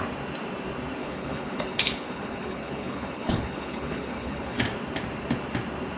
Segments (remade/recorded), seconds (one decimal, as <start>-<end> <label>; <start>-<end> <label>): 0.0-1.0 recorded; 1.0-4.6 remade; 4.6-6.0 recorded

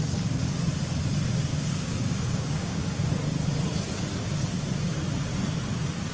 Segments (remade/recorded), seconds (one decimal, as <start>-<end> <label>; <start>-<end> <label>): 0.0-1.5 recorded; 1.5-2.8 remade; 2.8-6.1 recorded

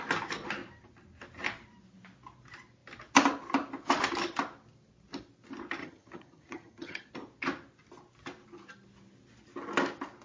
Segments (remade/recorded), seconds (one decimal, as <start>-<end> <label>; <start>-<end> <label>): 0.0-5.8 recorded; 5.8-7.1 remade; 7.1-10.2 recorded

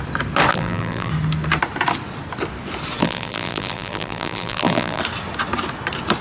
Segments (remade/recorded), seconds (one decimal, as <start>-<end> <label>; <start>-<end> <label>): 0.0-0.5 recorded; 0.5-1.1 remade; 1.1-3.0 recorded; 3.0-5.0 remade; 5.0-6.2 recorded

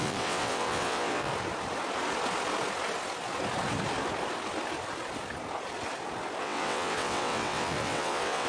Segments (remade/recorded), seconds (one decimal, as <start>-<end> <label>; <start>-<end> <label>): 0.0-1.3 remade; 1.3-6.4 recorded; 6.4-8.5 remade